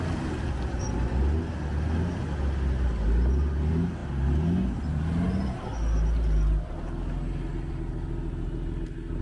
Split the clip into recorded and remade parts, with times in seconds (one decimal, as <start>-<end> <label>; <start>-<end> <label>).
0.0-9.2 recorded